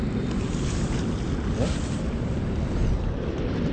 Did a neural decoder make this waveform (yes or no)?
no